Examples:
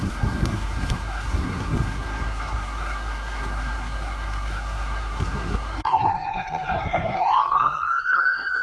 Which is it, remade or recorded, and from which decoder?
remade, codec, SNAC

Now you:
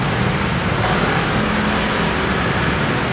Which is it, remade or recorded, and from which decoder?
recorded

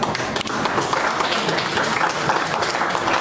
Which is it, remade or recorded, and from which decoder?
recorded